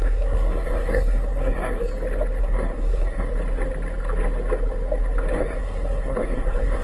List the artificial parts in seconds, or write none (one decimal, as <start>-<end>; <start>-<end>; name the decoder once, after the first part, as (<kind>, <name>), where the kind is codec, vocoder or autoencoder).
0.0-1.9 (codec, SNAC); 2.4-3.3; 5.4-6.8